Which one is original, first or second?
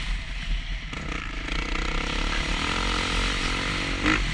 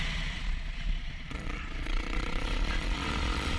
first